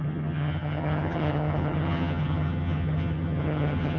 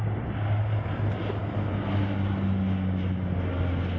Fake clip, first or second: first